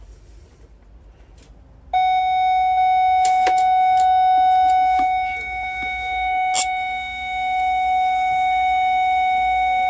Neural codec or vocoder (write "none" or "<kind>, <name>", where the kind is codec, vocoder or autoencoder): none